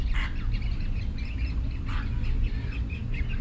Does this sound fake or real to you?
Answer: real